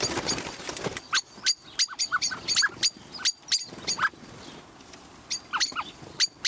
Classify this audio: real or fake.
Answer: real